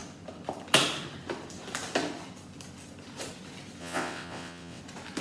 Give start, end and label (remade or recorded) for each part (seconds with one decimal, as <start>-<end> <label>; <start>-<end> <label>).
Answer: 0.0-3.8 recorded; 3.8-4.8 remade; 4.8-5.2 recorded